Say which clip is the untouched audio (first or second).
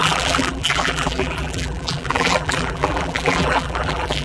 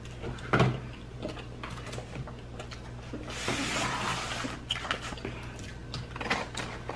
second